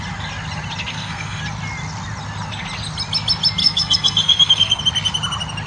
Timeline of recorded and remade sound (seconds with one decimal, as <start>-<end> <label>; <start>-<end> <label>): 0.0-0.9 recorded; 0.9-1.4 remade; 1.4-3.6 recorded; 3.6-4.8 remade; 4.8-5.7 recorded